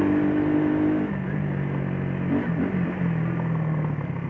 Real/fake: real